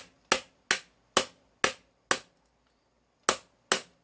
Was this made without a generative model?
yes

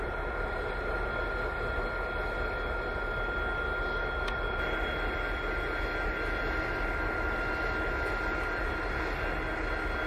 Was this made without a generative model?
yes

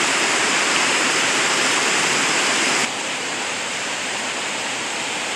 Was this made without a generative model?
no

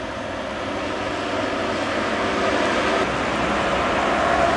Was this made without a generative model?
yes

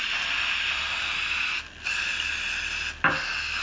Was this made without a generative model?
yes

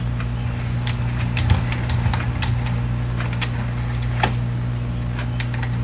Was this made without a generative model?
yes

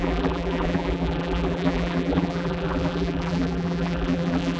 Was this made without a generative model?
no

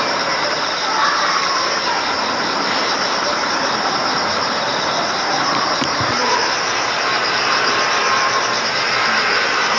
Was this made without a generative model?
no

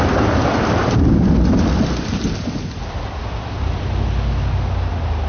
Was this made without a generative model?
yes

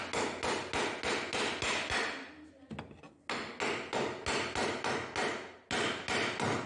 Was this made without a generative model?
yes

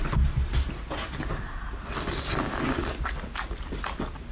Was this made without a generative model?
yes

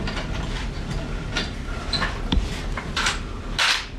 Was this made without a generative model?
yes